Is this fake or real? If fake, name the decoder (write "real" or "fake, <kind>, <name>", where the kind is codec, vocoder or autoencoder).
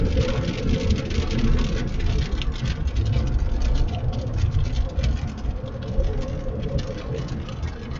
real